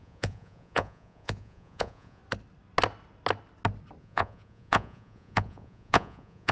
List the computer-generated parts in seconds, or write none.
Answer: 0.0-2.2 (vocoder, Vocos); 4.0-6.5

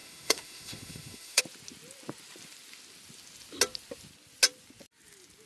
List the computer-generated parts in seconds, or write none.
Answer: 0.0-1.4 (autoencoder, DAC-VAE)